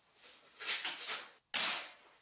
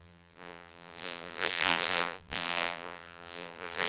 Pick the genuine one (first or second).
first